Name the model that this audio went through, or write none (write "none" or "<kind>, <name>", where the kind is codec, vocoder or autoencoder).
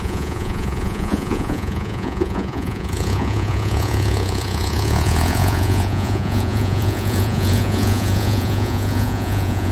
vocoder, Vocos